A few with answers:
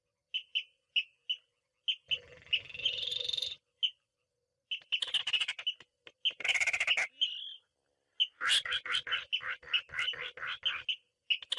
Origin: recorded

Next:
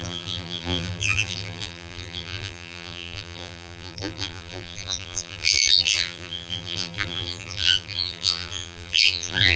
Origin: remade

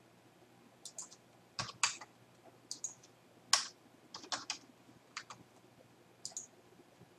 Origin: recorded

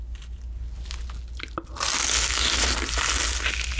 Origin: recorded